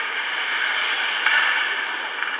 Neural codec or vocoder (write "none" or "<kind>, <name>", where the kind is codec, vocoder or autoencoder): none